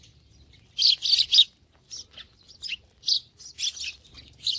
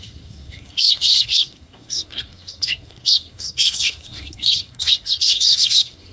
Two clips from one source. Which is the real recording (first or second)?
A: first